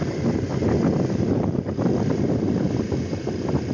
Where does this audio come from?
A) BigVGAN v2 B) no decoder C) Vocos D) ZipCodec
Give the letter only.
B